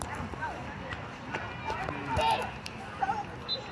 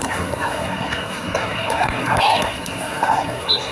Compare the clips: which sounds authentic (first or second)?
first